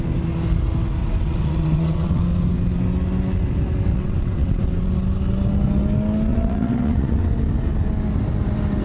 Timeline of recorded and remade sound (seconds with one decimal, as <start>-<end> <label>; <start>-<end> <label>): 0.0-1.0 recorded; 1.0-2.2 remade; 2.2-3.9 recorded; 3.9-4.8 remade; 4.8-6.3 recorded; 6.3-7.3 remade; 7.3-8.8 recorded